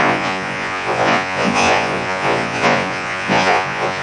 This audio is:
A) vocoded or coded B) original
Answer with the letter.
A